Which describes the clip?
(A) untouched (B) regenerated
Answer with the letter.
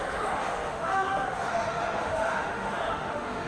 B